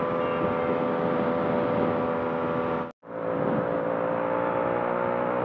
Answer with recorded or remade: recorded